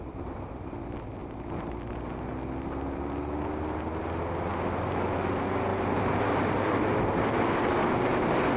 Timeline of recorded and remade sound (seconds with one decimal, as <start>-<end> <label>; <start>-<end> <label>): 0.0-1.2 recorded; 1.2-1.7 remade; 1.7-5.7 recorded; 5.7-7.2 remade; 7.2-8.6 recorded